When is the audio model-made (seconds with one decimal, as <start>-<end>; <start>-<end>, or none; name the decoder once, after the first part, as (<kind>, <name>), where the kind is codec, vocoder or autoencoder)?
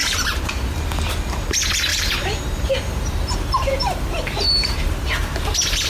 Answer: 0.0-0.6 (vocoder, BigVGAN v2); 1.9-5.4